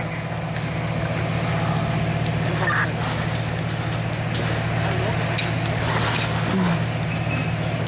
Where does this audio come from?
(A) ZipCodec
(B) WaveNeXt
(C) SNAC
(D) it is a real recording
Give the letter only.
D